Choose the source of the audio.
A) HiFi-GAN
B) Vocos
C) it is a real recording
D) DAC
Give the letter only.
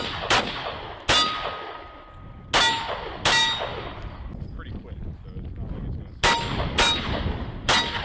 C